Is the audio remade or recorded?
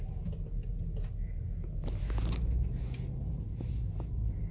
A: recorded